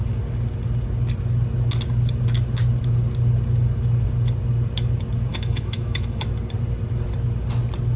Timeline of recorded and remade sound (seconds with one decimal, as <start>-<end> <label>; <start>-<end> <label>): 0.0-5.3 recorded; 5.3-6.2 remade; 6.2-8.0 recorded